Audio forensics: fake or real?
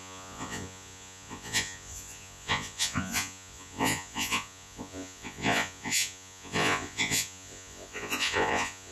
fake